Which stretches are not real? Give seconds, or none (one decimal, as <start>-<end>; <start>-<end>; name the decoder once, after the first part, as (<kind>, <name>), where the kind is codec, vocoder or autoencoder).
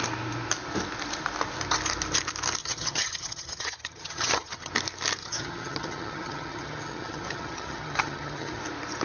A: 2.6-4.7 (vocoder, HiFi-GAN); 5.2-8.6